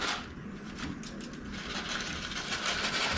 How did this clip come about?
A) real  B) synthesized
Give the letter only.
A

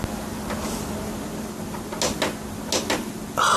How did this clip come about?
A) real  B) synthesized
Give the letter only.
A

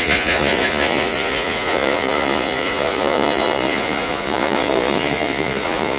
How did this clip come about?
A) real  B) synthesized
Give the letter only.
B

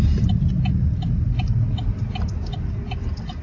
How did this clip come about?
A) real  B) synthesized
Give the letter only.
A